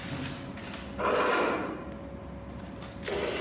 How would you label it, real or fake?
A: real